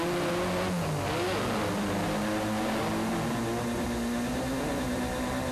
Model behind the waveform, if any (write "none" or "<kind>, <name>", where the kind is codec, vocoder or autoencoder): none